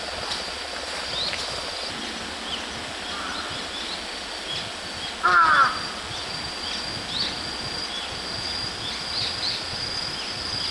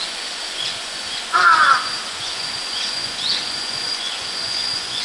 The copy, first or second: second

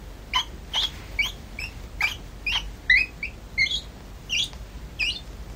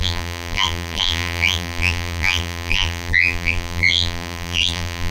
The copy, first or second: second